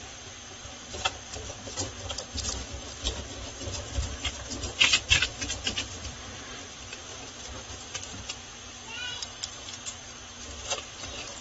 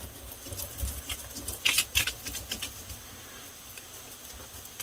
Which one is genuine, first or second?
second